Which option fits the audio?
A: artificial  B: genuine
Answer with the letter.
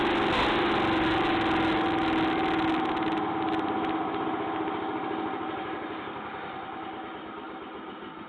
B